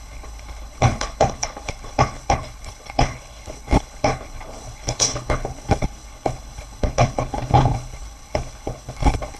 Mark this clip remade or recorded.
remade